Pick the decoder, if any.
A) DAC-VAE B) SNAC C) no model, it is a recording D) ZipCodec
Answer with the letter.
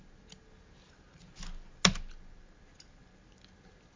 C